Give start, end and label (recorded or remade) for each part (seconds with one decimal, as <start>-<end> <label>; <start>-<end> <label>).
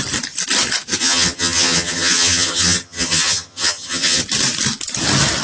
0.0-1.0 recorded; 1.0-4.2 remade; 4.2-5.4 recorded